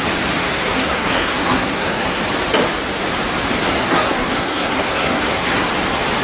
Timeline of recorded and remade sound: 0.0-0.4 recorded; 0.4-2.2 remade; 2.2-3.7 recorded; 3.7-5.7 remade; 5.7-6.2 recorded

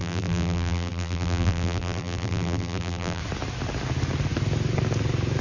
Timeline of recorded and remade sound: 0.0-3.2 remade; 3.2-5.4 recorded

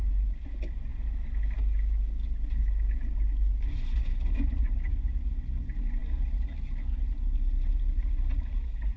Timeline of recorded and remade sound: 0.0-9.0 recorded

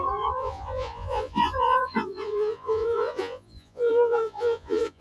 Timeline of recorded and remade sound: 0.0-5.0 remade

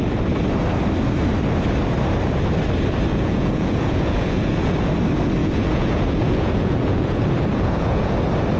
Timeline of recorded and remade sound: 0.0-3.1 recorded; 3.1-4.9 remade; 4.9-5.4 recorded; 5.4-8.1 remade; 8.1-8.6 recorded